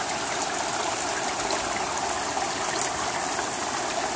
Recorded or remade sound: recorded